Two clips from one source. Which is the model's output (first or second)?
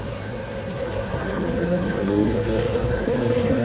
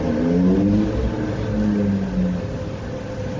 first